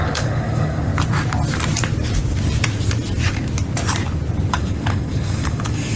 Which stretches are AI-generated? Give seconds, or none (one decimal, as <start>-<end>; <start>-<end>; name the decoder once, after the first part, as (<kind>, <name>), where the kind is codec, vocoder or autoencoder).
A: 0.0-0.9 (codec, DAC); 4.5-6.0